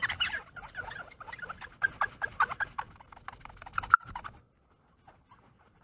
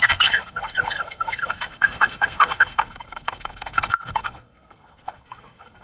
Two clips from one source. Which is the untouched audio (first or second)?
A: first